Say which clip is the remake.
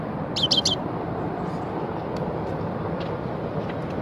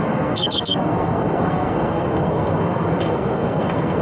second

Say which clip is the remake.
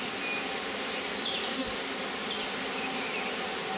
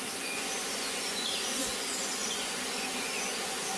second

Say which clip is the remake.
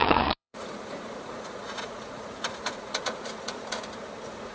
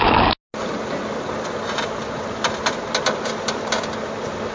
first